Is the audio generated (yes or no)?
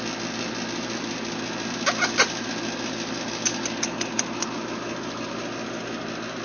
no